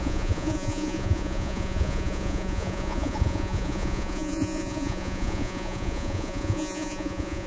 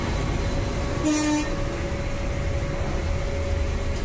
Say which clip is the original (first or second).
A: second